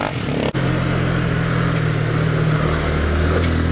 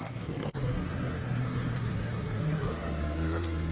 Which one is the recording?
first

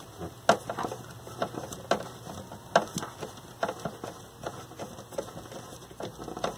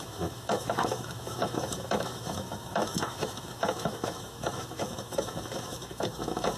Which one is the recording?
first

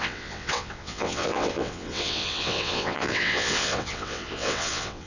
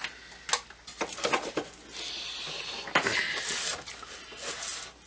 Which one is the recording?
second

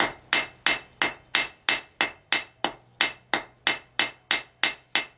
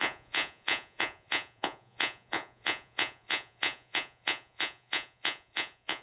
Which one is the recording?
first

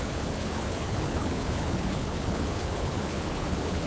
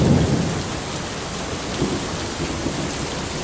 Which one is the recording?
second